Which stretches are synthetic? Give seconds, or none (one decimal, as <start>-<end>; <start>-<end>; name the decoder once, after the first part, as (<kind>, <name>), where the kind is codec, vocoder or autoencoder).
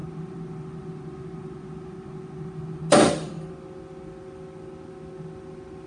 none